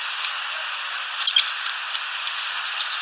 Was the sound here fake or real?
real